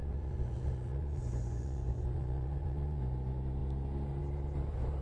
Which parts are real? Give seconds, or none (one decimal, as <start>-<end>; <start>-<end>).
3.0-5.0